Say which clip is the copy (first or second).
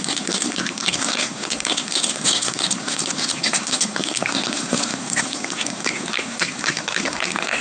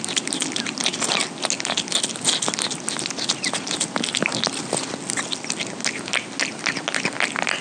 first